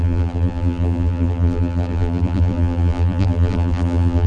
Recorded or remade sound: remade